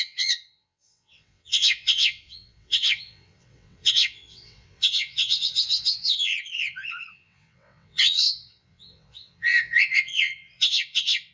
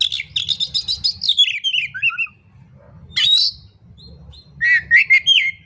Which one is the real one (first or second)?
second